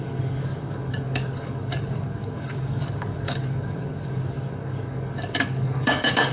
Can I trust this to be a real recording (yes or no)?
no